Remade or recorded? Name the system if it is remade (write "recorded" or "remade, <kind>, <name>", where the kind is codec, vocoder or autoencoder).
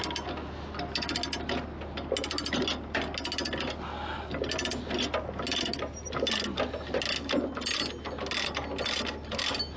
recorded